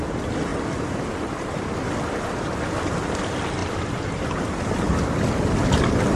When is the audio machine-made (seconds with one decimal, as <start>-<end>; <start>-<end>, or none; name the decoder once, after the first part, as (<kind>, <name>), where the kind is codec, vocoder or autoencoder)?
3.6-4.4 (vocoder, BigVGAN v2)